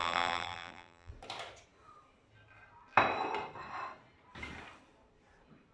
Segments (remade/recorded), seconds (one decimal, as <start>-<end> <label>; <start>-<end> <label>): 0.0-1.1 remade; 1.1-5.7 recorded